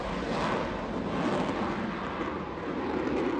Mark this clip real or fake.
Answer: real